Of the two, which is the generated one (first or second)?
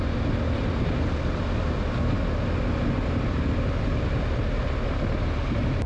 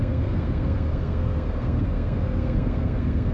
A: second